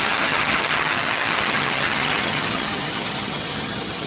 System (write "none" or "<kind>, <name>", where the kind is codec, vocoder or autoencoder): vocoder, HiFi-GAN